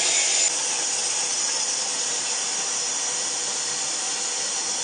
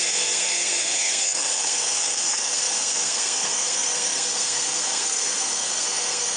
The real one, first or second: first